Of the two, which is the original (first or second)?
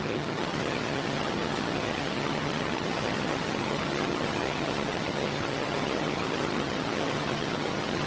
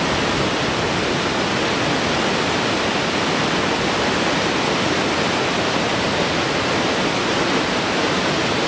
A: second